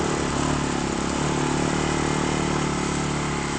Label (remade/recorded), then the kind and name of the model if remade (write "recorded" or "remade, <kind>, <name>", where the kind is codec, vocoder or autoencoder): recorded